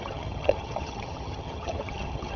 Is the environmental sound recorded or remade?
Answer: remade